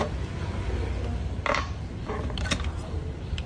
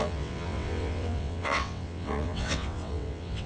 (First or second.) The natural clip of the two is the first